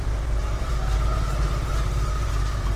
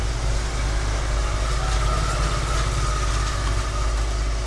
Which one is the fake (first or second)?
first